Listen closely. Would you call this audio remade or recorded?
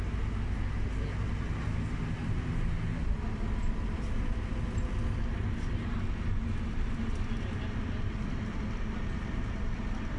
recorded